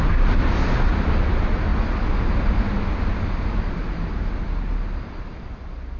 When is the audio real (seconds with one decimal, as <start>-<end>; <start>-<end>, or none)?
0.0-6.0